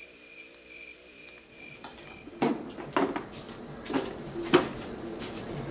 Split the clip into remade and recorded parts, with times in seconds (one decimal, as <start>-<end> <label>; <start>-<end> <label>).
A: 0.0-5.7 recorded